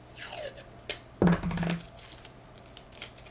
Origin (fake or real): real